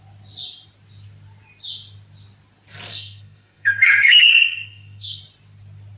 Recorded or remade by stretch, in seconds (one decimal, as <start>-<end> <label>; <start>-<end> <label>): 0.0-2.9 recorded; 2.9-5.2 remade; 5.2-6.0 recorded